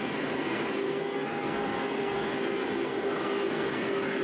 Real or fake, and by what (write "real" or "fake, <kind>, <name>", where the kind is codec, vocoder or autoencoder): fake, codec, SNAC